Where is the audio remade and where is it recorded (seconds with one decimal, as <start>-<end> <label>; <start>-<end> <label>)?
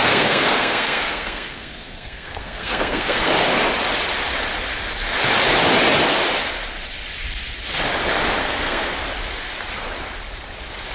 0.0-3.3 remade; 3.3-8.4 recorded; 8.4-8.9 remade; 8.9-10.9 recorded